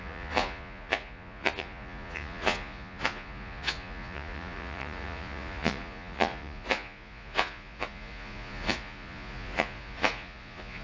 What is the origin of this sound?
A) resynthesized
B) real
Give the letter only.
A